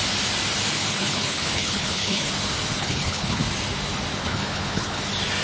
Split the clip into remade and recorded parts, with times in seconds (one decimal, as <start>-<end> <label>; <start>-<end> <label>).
0.0-0.9 recorded; 0.9-2.3 remade; 2.3-2.8 recorded; 2.8-3.4 remade; 3.4-4.2 recorded; 4.2-5.0 remade; 5.0-5.4 recorded